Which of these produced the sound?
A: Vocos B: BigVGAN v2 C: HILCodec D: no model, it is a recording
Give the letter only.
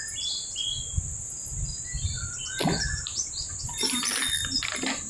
D